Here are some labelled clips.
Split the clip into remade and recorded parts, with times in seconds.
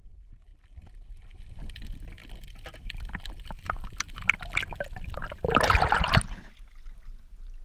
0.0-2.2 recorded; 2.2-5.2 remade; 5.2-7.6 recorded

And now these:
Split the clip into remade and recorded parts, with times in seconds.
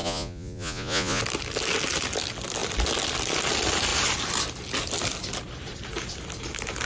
0.0-1.2 remade; 1.2-6.9 recorded